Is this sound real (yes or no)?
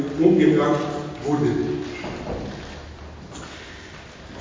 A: yes